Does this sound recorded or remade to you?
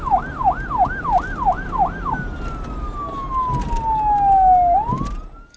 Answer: recorded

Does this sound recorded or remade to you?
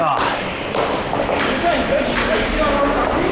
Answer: recorded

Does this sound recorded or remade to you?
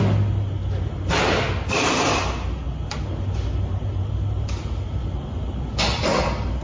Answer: recorded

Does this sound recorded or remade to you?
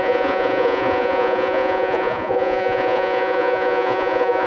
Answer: remade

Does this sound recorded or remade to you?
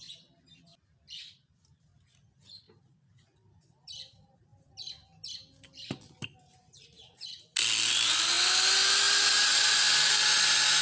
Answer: recorded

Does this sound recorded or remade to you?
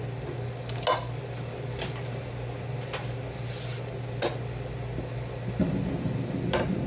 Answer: recorded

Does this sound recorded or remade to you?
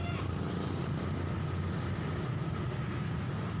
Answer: recorded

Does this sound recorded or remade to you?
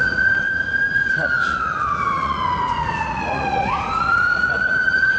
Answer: remade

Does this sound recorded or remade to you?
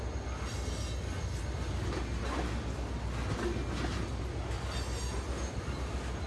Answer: recorded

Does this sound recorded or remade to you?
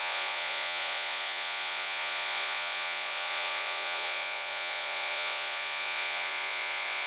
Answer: remade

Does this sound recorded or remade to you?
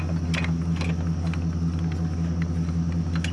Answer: recorded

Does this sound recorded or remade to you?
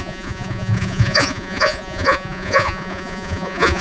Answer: remade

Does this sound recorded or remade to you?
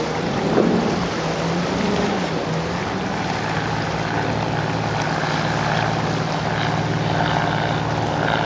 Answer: recorded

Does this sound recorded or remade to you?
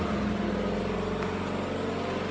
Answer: recorded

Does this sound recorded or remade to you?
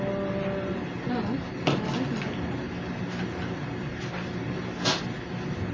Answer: recorded